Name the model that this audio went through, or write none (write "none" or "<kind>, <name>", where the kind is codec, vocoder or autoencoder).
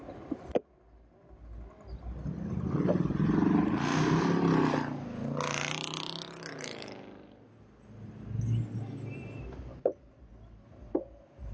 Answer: none